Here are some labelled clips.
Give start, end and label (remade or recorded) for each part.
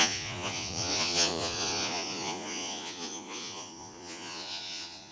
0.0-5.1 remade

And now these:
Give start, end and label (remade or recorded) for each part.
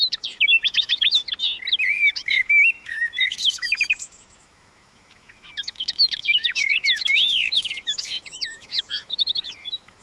0.0-1.2 remade; 1.2-1.9 recorded; 1.9-10.0 remade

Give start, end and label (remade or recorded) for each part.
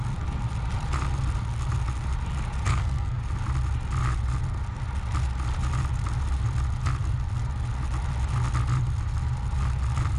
0.0-2.7 recorded; 2.7-3.2 remade; 3.2-10.2 recorded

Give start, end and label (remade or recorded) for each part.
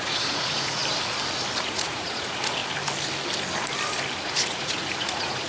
0.0-0.8 remade; 0.8-1.6 recorded; 1.6-2.6 remade; 2.6-4.2 recorded; 4.2-5.5 remade